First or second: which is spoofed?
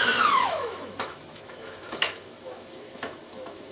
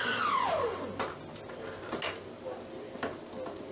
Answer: first